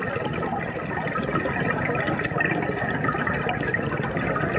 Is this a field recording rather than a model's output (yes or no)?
yes